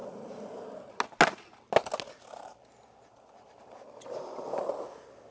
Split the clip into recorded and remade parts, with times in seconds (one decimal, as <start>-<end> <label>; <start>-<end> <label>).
0.0-5.3 recorded